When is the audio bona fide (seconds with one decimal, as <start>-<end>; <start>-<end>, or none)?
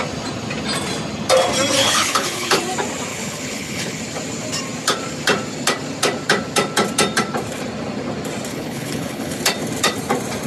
0.0-1.8; 2.6-3.1; 4.0-8.5; 9.4-10.5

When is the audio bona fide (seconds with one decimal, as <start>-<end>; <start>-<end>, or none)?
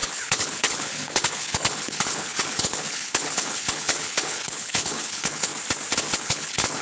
5.5-6.2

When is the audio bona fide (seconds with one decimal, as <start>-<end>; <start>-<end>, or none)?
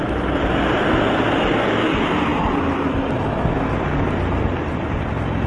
0.0-5.5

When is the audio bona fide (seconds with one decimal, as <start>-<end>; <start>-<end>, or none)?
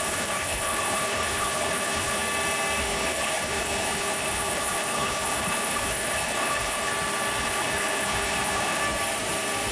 2.2-2.8; 6.9-7.4; 8.8-9.7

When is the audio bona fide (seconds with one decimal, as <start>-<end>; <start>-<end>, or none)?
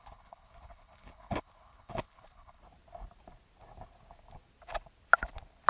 2.6-5.7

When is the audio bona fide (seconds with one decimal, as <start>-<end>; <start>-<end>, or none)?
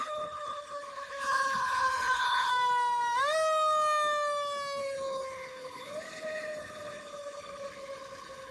2.5-4.8